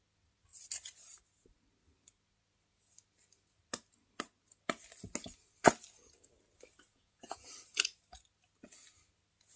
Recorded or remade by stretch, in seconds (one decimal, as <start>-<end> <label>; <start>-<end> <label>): 0.0-6.9 recorded; 6.9-7.5 remade; 7.5-9.6 recorded